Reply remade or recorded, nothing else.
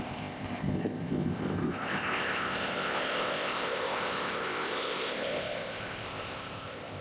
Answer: remade